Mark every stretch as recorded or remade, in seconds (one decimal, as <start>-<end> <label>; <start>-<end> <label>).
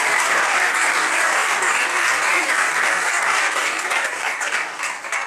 0.0-5.3 remade